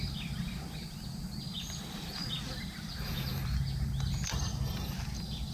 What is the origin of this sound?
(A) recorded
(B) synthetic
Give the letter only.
A